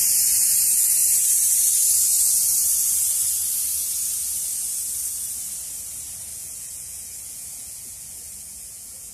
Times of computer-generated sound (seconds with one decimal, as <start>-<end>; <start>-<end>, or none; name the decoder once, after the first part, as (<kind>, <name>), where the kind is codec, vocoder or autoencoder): 6.3-9.1 (vocoder, Vocos)